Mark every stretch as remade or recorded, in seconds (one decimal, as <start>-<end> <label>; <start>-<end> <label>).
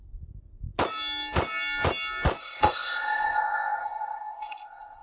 0.0-2.4 recorded; 2.4-5.0 remade